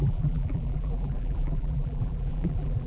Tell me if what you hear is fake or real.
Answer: fake